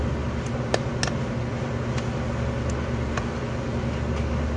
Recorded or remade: recorded